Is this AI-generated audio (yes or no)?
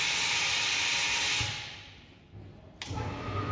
no